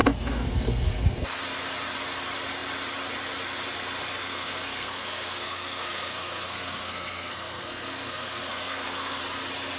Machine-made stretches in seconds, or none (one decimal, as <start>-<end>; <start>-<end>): 0.0-1.4; 4.2-9.2